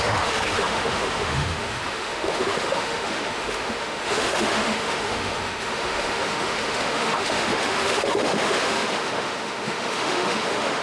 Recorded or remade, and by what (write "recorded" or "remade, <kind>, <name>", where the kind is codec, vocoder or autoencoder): remade, autoencoder, DAC-VAE